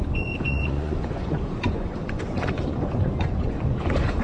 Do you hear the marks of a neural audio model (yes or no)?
yes